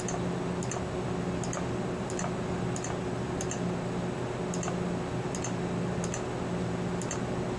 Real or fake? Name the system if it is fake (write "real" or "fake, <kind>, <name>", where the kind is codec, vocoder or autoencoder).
real